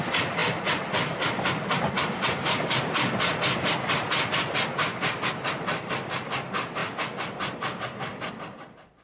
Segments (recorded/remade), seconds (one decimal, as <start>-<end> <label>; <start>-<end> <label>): 0.0-9.0 recorded